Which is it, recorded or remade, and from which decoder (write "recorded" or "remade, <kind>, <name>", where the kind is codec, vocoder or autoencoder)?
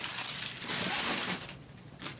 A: recorded